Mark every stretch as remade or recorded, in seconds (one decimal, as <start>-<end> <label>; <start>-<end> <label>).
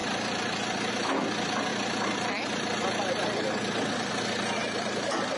0.0-0.9 remade; 0.9-1.7 recorded; 1.7-4.1 remade; 4.1-4.6 recorded; 4.6-5.4 remade